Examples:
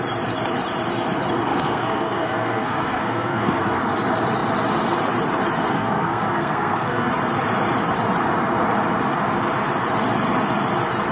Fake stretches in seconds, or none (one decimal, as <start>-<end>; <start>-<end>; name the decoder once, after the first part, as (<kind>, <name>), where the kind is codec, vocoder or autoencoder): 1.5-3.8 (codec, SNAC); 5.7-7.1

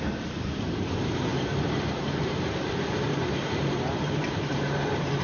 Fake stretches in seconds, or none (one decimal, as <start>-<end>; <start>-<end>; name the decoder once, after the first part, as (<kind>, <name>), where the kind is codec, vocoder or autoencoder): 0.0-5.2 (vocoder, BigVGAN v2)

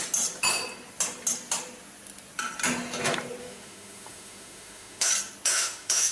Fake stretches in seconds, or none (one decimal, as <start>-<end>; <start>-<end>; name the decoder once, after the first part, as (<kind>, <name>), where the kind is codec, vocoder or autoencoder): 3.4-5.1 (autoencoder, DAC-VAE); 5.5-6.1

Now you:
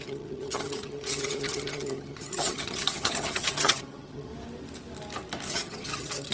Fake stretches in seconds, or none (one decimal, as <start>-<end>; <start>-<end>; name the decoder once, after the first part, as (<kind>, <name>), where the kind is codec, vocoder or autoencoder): 0.0-4.3 (vocoder, HiFi-GAN); 5.5-6.3

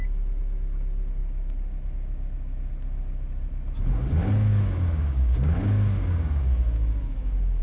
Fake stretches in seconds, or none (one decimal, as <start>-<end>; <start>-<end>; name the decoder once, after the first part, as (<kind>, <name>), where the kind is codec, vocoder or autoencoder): 4.5-7.6 (codec, DAC)

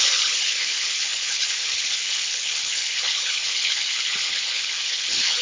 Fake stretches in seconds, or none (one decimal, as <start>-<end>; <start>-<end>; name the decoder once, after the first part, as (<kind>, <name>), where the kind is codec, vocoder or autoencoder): 0.0-5.4 (codec, HILCodec)

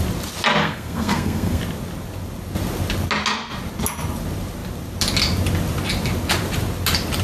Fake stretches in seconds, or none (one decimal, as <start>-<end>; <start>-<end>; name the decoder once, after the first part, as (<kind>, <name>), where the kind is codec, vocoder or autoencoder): 0.6-1.6 (codec, SNAC)

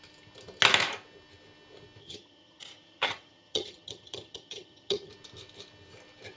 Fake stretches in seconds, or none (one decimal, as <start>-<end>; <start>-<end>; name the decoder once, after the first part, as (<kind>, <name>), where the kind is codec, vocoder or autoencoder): 2.0-5.1 (vocoder, HiFi-GAN)